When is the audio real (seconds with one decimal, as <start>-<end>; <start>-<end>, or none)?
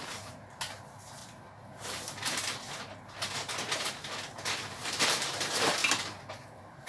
1.2-4.7; 5.8-6.5